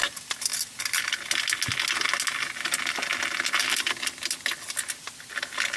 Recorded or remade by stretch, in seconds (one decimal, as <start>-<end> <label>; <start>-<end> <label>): 0.0-5.8 recorded